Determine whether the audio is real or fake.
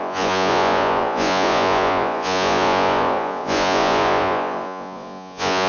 fake